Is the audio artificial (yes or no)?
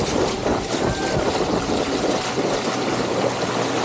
no